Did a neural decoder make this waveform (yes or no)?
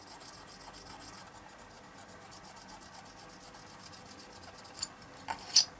no